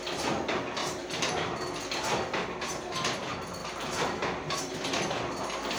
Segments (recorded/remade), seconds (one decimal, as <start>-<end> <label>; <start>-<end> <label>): 0.0-0.8 recorded; 0.8-1.3 remade; 1.3-5.8 recorded